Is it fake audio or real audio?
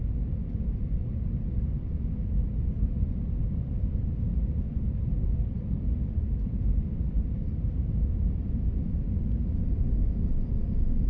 real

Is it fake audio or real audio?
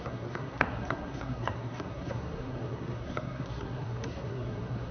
fake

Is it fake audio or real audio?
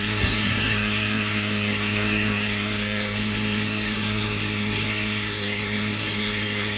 fake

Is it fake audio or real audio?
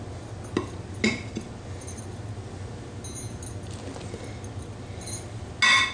real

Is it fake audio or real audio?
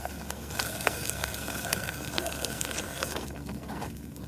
fake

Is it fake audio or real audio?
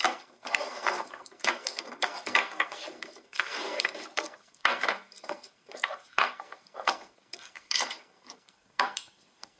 fake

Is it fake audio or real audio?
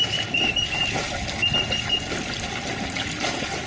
real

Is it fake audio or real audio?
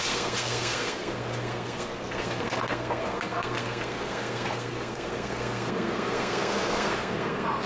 fake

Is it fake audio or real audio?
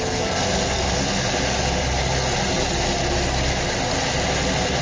real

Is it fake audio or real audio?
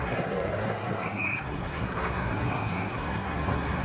fake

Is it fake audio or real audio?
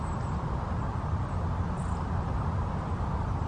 real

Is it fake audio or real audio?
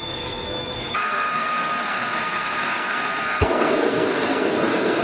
fake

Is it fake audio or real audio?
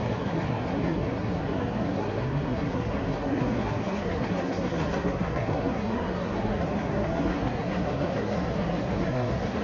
fake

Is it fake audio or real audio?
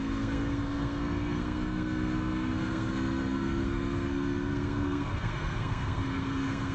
fake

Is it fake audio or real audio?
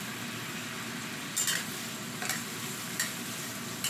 real